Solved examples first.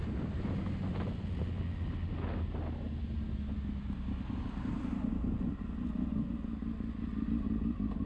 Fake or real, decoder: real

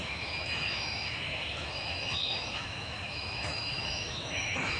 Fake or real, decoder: fake, autoencoder, DAC-VAE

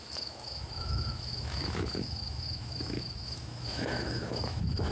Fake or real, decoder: fake, autoencoder, DAC-VAE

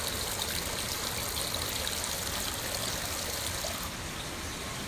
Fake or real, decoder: real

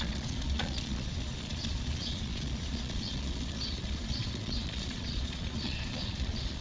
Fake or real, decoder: fake, vocoder, Vocos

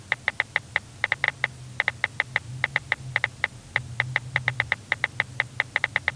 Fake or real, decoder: real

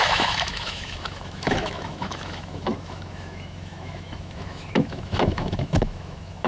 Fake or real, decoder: fake, autoencoder, DAC-VAE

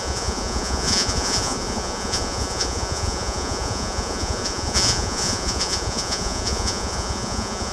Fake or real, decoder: fake, vocoder, Vocos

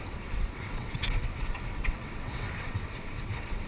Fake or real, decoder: fake, vocoder, WaveNeXt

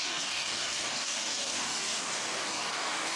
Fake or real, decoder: fake, codec, DAC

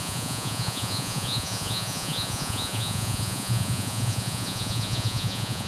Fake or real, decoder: fake, vocoder, Vocos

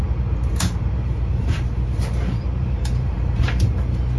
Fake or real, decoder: fake, vocoder, BigVGAN v2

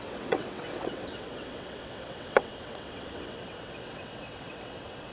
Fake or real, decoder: fake, vocoder, WaveNeXt